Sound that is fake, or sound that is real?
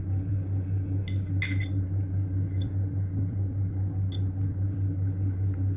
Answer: real